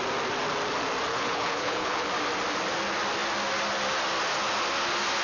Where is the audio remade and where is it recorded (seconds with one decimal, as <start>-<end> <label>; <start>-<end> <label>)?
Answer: 0.0-1.1 recorded; 1.1-2.1 remade; 2.1-5.2 recorded